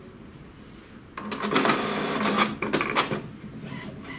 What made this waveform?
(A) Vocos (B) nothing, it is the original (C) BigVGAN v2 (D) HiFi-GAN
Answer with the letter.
B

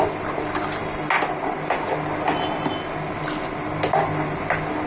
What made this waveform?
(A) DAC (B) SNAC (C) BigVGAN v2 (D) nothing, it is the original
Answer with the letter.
D